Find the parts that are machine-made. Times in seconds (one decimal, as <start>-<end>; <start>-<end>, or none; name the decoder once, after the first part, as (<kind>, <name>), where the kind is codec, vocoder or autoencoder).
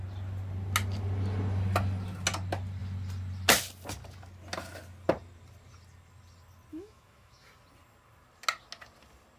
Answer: 6.7-7.5 (autoencoder, DAC-VAE)